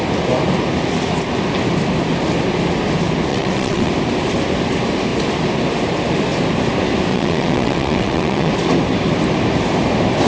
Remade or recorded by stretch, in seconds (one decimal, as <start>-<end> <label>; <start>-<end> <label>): 0.0-3.3 recorded; 3.3-3.9 remade; 3.9-7.1 recorded; 7.1-8.5 remade; 8.5-10.3 recorded